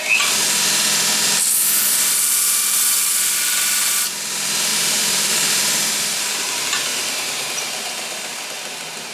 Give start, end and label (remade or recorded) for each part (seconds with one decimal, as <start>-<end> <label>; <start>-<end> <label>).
0.0-4.7 recorded; 4.7-6.3 remade; 6.3-6.9 recorded; 6.9-8.4 remade; 8.4-9.1 recorded